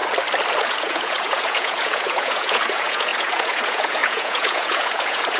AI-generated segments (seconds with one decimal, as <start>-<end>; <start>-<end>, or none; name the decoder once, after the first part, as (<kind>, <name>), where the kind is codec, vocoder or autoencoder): 0.6-5.4 (vocoder, Vocos)